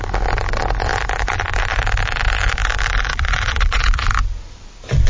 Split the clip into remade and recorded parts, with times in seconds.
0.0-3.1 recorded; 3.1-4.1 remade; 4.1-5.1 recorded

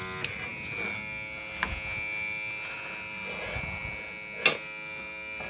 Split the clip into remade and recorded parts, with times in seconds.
0.0-5.5 recorded

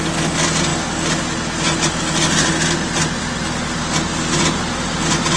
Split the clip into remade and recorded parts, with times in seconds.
0.0-5.4 recorded

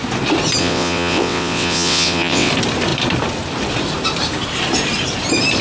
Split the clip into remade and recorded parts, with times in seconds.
0.0-0.6 recorded; 0.6-2.5 remade; 2.5-5.6 recorded

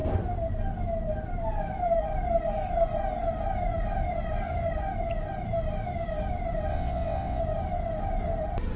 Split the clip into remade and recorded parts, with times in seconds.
0.0-6.7 recorded; 6.7-7.4 remade; 7.4-8.8 recorded